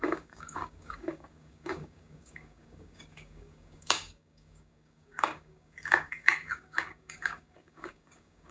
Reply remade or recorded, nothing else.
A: remade